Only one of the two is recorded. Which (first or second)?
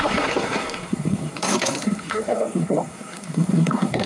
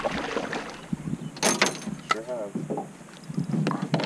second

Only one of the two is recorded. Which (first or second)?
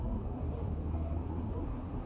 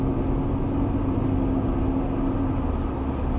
second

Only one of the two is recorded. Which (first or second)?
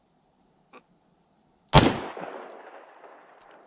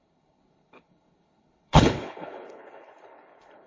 first